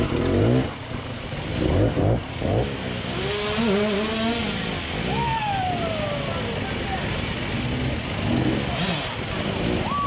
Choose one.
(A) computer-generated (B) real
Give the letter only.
B